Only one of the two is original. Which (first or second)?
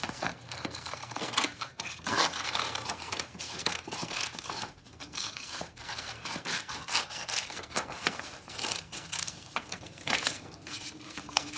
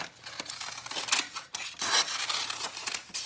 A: second